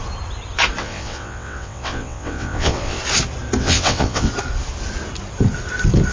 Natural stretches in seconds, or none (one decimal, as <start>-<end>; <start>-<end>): 0.0-0.8; 3.0-3.6; 4.3-6.1